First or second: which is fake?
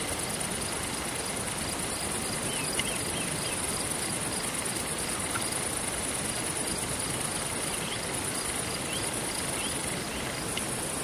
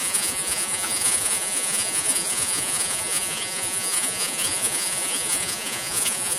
second